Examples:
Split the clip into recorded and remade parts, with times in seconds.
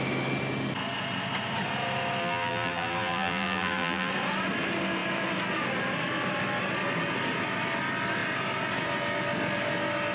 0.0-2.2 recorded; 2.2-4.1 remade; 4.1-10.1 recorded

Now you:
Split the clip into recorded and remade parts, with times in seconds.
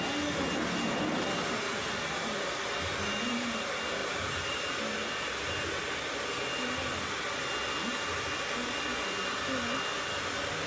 0.0-4.0 recorded; 4.0-4.9 remade; 4.9-10.7 recorded